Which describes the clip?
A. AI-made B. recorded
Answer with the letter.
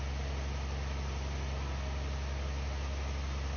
B